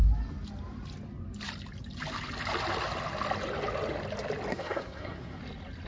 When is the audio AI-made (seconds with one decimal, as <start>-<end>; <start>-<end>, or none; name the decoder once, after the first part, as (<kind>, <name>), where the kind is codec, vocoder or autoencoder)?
4.5-5.4 (codec, SNAC)